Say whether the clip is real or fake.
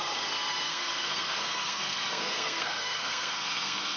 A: fake